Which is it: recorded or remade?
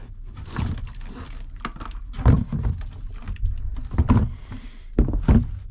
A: recorded